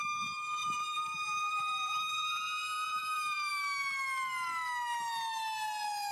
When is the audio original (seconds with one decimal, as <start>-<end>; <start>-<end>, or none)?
0.0-0.6; 3.5-6.1